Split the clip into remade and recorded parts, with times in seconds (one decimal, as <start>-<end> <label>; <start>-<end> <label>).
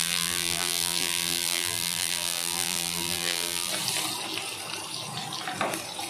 0.0-3.7 remade; 3.7-6.1 recorded